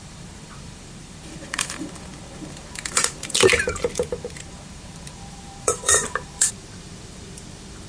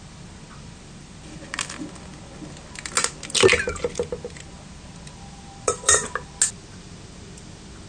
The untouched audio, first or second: second